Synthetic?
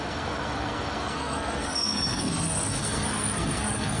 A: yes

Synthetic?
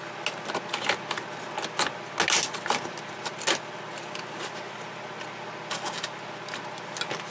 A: no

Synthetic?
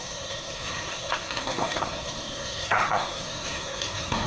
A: yes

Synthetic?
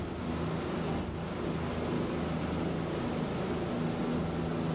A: no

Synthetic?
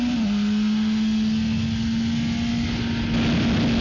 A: no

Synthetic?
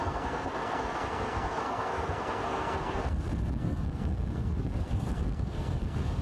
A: yes